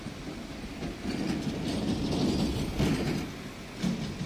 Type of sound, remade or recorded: recorded